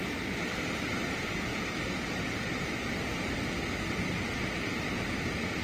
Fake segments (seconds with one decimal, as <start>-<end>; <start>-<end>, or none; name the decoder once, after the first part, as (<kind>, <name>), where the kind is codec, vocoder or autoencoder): none